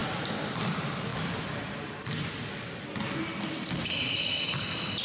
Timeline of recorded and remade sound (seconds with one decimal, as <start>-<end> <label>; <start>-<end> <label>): 0.0-5.0 recorded